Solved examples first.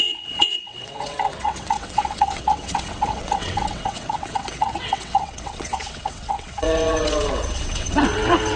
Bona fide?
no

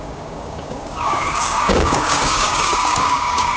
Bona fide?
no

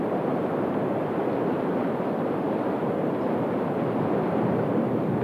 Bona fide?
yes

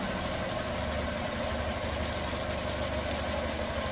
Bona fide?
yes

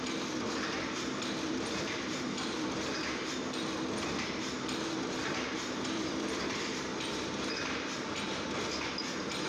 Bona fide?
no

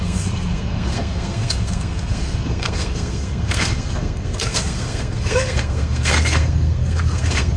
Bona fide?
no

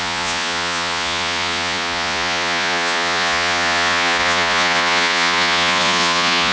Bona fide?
no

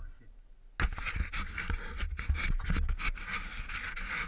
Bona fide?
yes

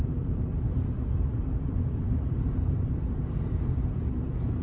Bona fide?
no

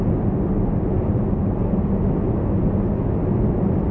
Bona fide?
yes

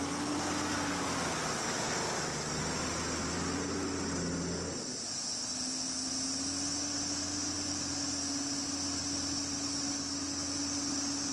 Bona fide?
yes